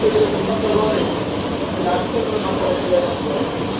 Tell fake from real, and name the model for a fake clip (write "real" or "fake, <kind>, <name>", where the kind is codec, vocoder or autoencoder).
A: real